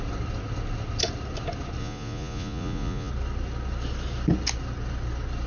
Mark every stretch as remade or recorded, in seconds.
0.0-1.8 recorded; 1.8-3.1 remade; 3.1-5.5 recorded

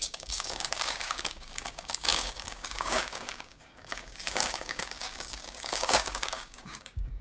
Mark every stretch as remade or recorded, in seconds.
0.0-7.2 remade